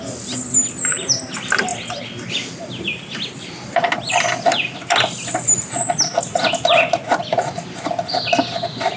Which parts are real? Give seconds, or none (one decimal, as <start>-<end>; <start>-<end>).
0.0-9.0

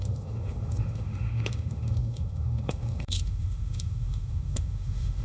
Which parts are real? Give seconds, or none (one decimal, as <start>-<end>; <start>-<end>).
none

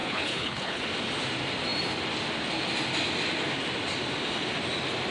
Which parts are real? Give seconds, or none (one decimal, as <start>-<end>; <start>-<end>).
0.8-5.1